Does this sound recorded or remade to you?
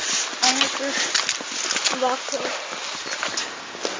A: recorded